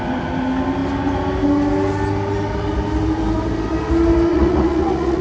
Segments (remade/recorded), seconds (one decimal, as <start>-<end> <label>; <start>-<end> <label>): 0.0-4.3 recorded; 4.3-5.2 remade